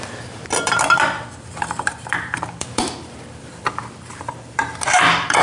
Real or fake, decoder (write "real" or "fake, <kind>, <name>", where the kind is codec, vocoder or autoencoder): fake, vocoder, BigVGAN v2